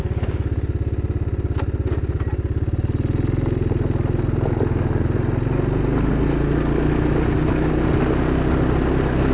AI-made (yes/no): no